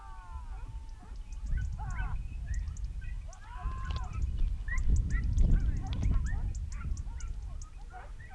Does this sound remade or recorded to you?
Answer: recorded